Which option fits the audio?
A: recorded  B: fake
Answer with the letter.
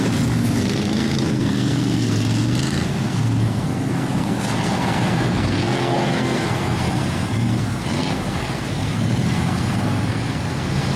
B